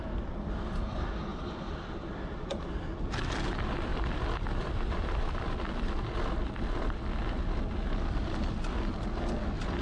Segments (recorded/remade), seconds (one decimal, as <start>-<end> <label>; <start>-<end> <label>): 0.0-1.3 recorded; 1.3-2.6 remade; 2.6-3.9 recorded; 3.9-5.7 remade; 5.7-9.8 recorded